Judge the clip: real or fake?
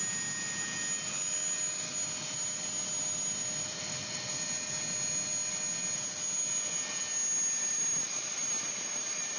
real